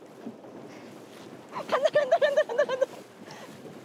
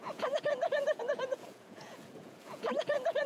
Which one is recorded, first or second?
first